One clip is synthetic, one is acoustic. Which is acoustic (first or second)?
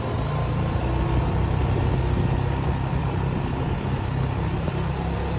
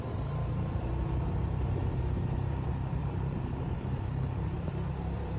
first